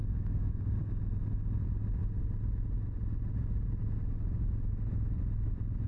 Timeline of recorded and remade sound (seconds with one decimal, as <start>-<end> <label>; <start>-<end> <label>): 0.0-0.6 remade; 0.6-5.9 recorded